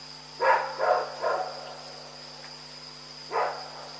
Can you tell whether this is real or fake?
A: real